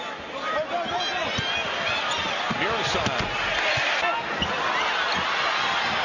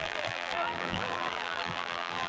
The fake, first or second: second